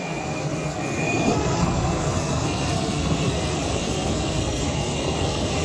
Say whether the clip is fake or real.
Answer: fake